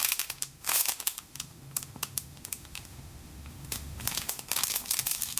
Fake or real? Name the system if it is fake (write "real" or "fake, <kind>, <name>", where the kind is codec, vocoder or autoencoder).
fake, autoencoder, DAC-VAE